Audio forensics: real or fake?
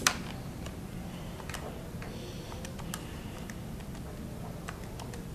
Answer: real